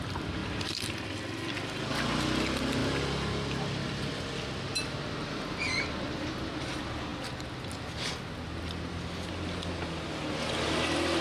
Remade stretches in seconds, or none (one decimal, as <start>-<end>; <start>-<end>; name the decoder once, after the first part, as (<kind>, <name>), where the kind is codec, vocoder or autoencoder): none